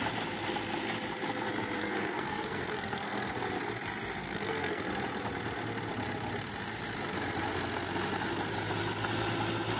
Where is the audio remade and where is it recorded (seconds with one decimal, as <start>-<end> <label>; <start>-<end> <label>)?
0.0-1.8 recorded; 1.8-3.3 remade; 3.3-4.2 recorded; 4.2-4.9 remade; 4.9-9.8 recorded